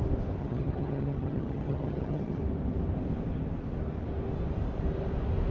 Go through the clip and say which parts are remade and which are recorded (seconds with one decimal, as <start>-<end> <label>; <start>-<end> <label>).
0.0-0.4 recorded; 0.4-2.4 remade; 2.4-5.5 recorded